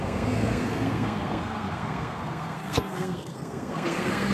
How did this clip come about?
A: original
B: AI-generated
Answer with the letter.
B